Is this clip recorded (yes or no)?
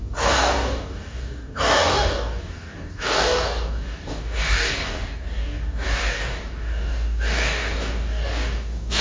no